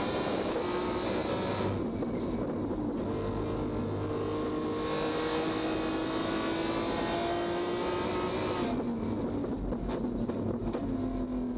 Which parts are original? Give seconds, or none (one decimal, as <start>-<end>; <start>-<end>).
0.0-11.6